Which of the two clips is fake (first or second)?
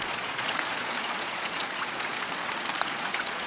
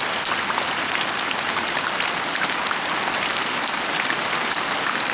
first